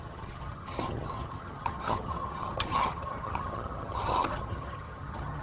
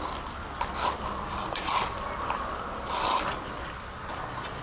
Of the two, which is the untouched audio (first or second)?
second